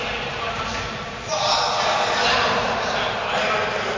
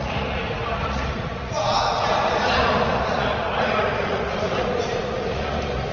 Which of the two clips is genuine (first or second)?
first